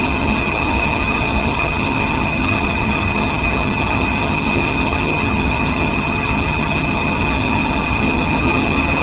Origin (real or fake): fake